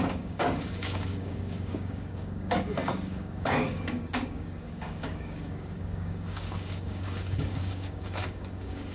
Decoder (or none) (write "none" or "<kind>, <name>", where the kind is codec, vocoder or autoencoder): codec, DAC